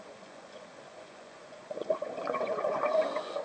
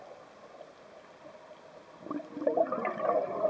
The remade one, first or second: first